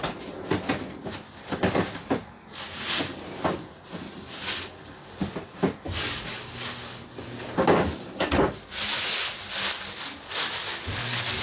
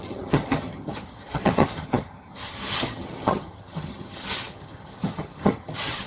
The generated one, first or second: second